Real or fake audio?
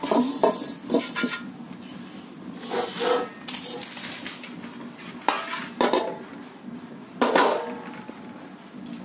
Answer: real